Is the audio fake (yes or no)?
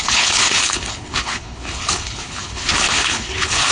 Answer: yes